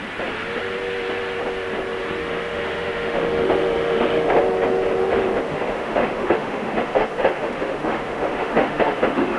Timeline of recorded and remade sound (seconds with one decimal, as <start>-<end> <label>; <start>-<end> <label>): 0.0-2.2 recorded; 2.2-4.4 remade; 4.4-5.0 recorded; 5.0-9.4 remade